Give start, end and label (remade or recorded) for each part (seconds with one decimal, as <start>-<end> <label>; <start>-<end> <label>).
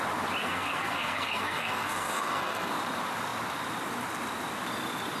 0.0-0.4 recorded; 0.4-2.7 remade; 2.7-5.2 recorded